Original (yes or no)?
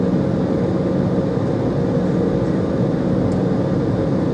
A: yes